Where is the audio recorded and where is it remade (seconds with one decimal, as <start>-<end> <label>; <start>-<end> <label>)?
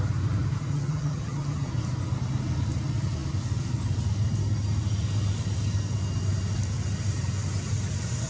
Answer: 0.0-0.7 recorded; 0.7-1.7 remade; 1.7-8.3 recorded